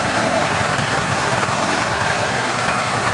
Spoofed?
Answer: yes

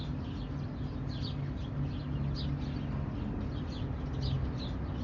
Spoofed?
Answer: no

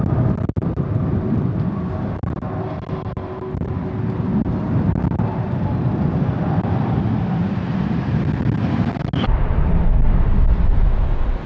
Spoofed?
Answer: no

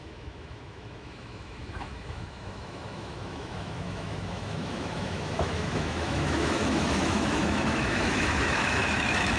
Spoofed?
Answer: yes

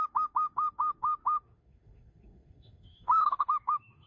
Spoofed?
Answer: yes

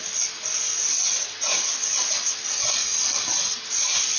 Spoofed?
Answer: no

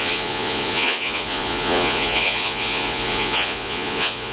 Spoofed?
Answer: yes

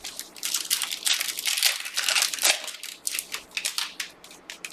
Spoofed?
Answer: no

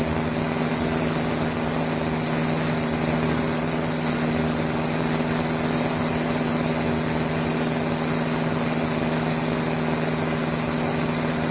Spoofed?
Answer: no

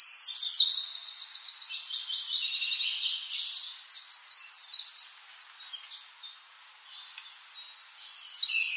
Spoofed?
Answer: no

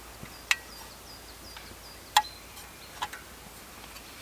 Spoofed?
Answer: no